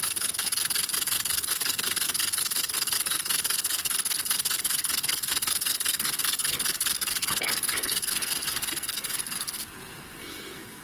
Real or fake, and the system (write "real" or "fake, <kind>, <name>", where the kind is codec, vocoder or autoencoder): fake, codec, SNAC